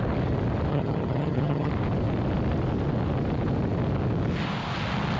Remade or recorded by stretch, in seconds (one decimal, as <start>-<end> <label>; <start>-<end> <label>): 0.0-0.7 recorded; 0.7-1.7 remade; 1.7-5.2 recorded